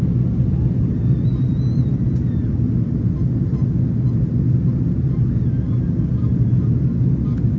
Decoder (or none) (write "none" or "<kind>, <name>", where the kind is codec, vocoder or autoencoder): none